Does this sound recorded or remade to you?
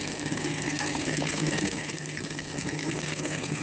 remade